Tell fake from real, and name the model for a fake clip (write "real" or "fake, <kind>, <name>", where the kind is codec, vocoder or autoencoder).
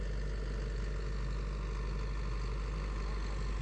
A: real